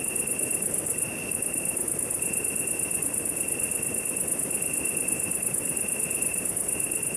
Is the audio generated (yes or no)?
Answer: no